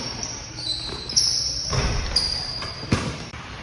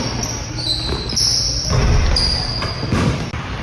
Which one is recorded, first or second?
second